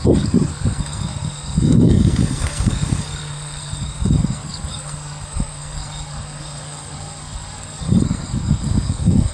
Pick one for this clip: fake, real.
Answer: fake